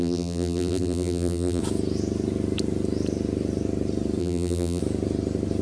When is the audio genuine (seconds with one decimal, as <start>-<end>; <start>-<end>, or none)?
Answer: 1.6-4.2; 4.8-5.6